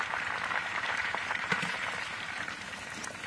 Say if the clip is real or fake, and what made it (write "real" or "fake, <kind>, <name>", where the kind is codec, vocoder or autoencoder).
fake, vocoder, BigVGAN v2